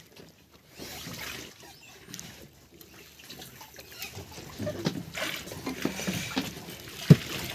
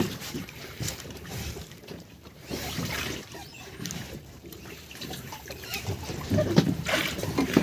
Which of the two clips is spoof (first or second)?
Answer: second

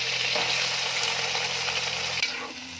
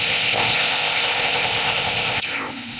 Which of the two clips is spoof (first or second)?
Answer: second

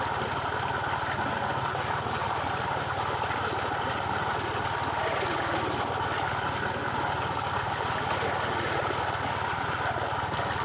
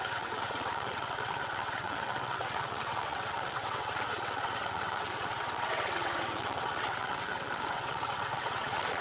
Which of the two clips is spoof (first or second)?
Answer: second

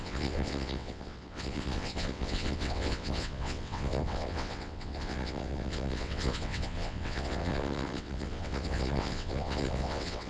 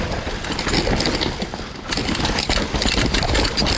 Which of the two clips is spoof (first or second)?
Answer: first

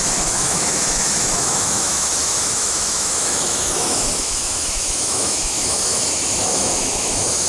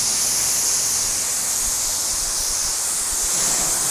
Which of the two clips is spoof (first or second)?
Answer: first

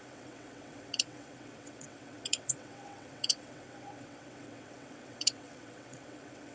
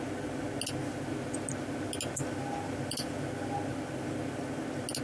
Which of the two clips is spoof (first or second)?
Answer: first